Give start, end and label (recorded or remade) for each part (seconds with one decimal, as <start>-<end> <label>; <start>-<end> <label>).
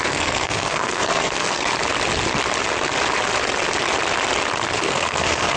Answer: 0.0-1.7 remade; 1.7-4.8 recorded; 4.8-5.6 remade